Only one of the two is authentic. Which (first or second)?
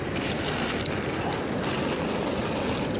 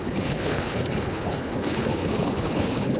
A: first